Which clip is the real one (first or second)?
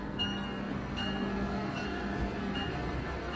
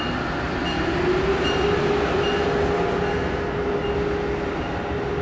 second